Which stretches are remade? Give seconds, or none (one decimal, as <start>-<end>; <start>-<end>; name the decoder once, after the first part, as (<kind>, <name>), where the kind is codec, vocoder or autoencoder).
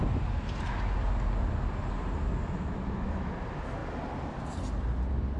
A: 2.4-3.3 (autoencoder, DAC-VAE)